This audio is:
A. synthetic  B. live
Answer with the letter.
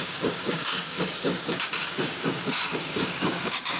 A